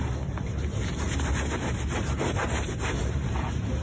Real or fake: real